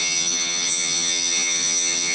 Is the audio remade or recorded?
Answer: remade